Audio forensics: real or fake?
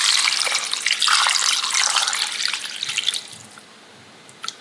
real